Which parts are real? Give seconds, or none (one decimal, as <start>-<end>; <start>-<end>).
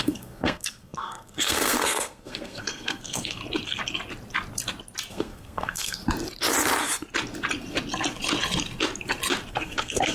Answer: 3.4-5.1; 6.0-9.5